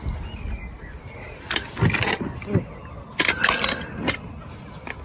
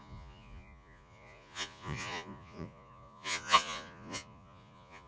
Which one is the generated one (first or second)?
second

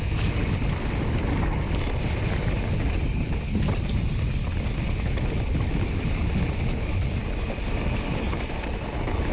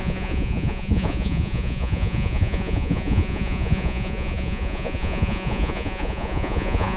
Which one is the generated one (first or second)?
second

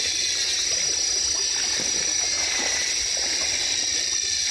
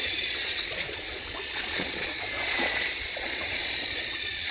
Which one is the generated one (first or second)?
second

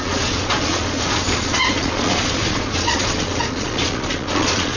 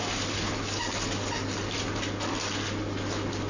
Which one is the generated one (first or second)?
first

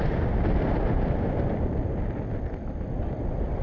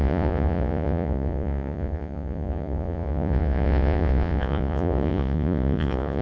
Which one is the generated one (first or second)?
second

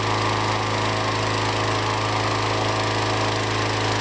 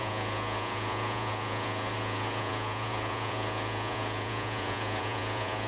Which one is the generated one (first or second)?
second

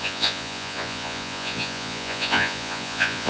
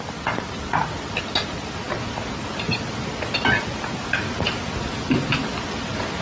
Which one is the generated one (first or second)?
first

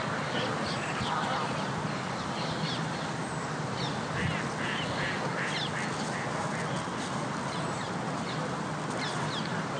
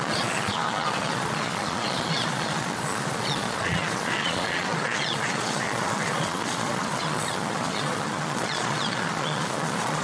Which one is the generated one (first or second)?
second